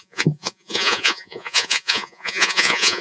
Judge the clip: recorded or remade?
remade